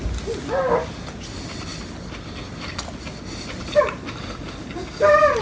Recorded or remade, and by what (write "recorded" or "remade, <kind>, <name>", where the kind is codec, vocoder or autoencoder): recorded